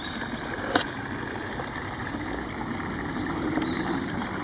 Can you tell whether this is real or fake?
real